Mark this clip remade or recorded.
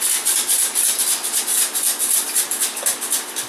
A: remade